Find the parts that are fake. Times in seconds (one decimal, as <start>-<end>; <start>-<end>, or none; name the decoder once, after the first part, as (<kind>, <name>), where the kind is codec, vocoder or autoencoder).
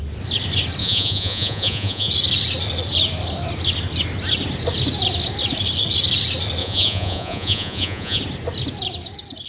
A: 0.8-2.1 (vocoder, Vocos); 6.6-8.2